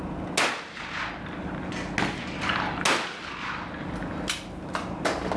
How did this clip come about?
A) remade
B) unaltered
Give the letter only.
B